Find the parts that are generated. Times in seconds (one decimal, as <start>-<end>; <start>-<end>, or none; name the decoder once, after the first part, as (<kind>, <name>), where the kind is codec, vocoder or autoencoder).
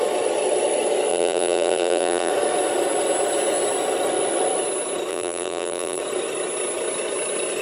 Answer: 1.1-2.3 (vocoder, BigVGAN v2); 5.1-6.0